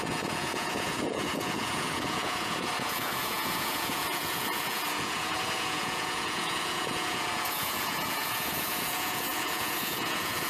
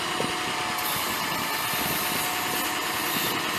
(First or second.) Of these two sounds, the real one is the second